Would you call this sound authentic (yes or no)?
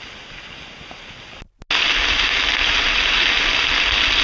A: yes